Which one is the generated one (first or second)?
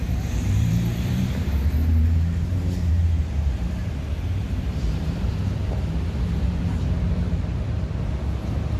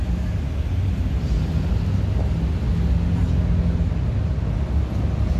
first